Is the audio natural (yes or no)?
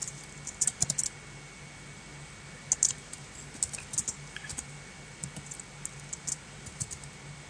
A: yes